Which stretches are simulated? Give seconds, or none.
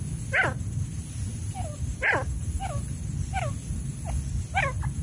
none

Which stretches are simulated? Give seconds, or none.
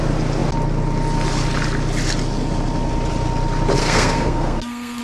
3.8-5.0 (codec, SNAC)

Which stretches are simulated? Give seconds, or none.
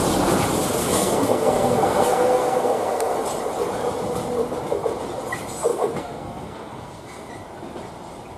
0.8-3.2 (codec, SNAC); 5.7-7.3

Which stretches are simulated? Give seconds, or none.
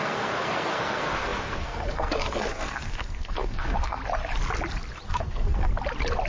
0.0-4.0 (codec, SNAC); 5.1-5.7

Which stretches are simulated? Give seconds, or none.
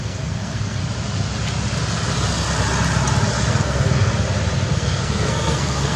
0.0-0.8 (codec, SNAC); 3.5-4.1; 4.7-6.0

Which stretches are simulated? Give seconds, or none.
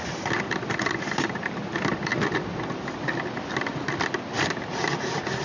none